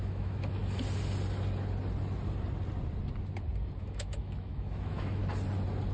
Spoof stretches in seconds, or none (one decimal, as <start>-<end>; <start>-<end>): 0.0-0.6; 3.8-5.2

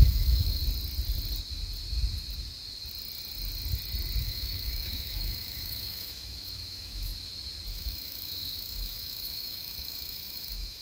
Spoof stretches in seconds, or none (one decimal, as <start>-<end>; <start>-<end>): 0.0-0.6; 4.2-7.1; 7.7-10.8